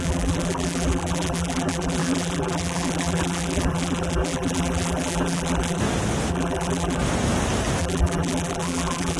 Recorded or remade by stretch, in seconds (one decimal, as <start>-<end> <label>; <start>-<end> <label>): 0.0-5.8 remade; 5.8-6.3 recorded; 6.3-7.0 remade; 7.0-7.8 recorded; 7.8-9.2 remade